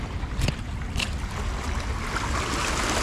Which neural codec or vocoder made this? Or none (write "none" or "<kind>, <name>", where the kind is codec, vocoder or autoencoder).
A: none